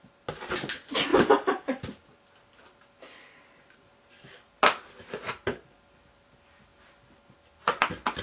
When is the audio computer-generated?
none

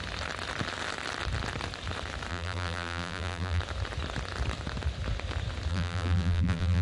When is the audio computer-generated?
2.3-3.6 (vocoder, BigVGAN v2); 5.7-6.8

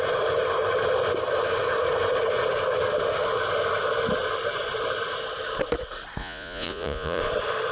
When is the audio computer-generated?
6.2-7.2 (vocoder, Vocos)

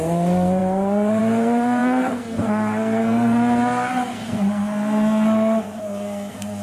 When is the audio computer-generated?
0.0-6.6 (codec, SNAC)